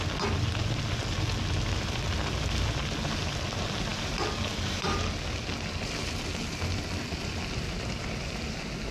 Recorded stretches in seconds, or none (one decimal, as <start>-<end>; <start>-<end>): 0.0-8.9